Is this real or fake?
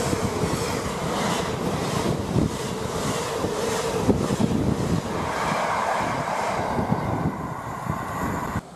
real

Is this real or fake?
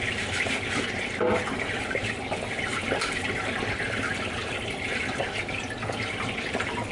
fake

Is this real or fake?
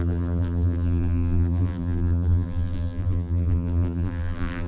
fake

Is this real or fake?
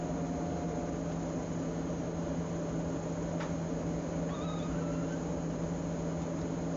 real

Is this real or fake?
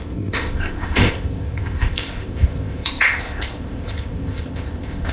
fake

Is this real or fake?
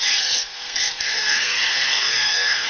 fake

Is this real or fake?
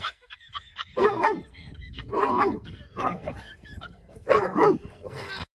fake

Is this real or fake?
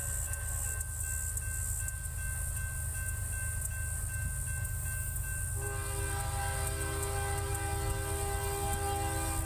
real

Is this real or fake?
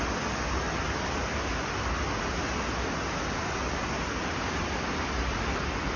real